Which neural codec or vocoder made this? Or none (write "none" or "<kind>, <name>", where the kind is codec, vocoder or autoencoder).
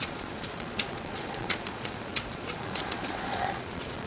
vocoder, Vocos